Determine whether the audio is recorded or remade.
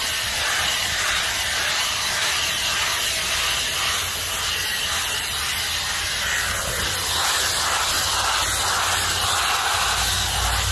recorded